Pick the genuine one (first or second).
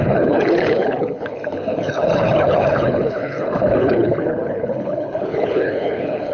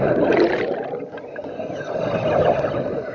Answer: second